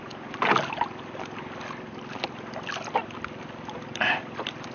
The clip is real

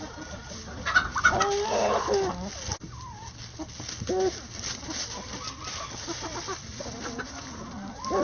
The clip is real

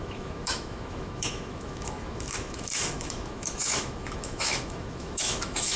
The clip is fake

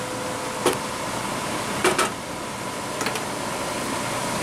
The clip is real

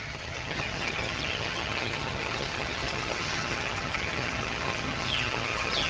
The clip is fake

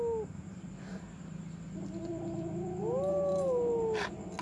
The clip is real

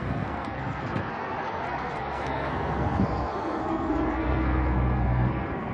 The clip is fake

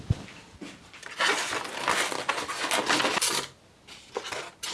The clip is real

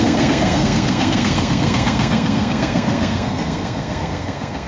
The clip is fake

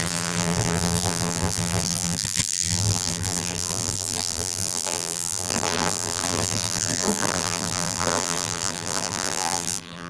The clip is fake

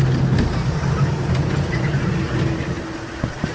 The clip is real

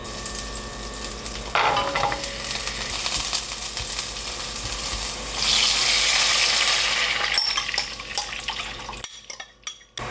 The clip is real